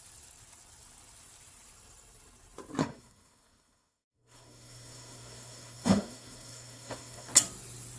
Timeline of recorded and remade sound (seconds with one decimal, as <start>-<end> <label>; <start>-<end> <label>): 0.0-2.8 recorded; 2.8-7.3 remade; 7.3-8.0 recorded